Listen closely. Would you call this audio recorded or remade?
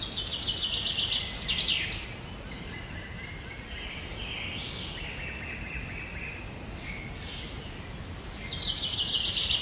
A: recorded